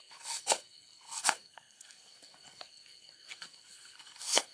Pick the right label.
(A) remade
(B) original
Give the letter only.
A